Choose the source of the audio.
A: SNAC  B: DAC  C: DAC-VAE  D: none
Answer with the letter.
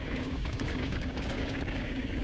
B